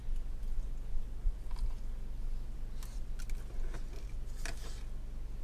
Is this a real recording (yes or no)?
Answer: yes